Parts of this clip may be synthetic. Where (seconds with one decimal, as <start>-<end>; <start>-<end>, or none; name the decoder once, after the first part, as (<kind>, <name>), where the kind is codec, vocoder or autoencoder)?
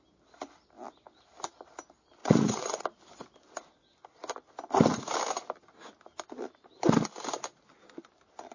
2.2-2.8 (vocoder, Vocos)